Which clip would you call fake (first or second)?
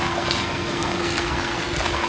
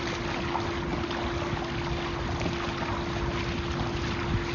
first